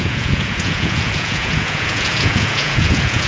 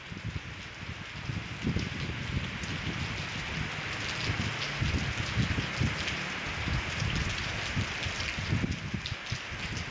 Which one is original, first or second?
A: second